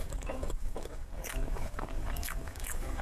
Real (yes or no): no